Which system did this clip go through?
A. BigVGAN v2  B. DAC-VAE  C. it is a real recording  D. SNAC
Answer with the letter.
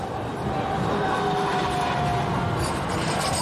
C